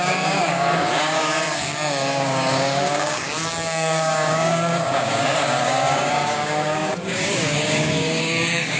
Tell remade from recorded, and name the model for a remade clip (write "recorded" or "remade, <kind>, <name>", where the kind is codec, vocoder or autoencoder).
remade, codec, DAC